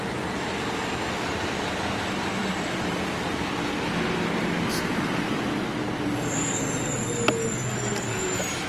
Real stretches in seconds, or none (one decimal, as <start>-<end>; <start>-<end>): 0.0-8.7